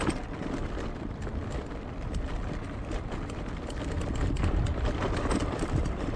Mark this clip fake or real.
real